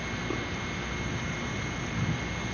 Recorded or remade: recorded